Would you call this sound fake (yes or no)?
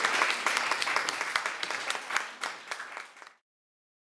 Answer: no